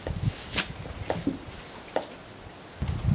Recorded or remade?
recorded